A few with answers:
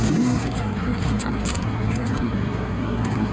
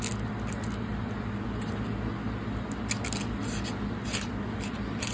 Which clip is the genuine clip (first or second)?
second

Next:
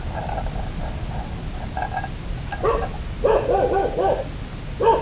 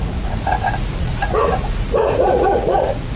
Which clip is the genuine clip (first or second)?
first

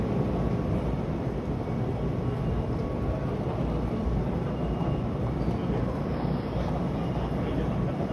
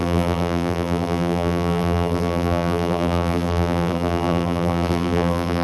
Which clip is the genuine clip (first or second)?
first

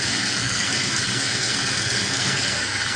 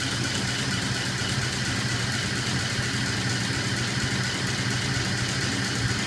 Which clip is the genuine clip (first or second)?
second